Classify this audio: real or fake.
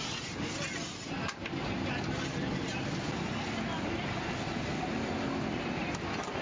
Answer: real